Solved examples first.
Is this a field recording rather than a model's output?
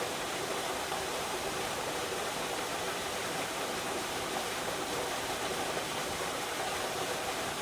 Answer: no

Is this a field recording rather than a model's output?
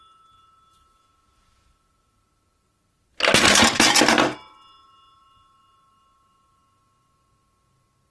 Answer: yes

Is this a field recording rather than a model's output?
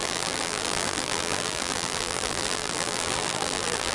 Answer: no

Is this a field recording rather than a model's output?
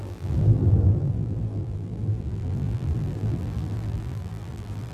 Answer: no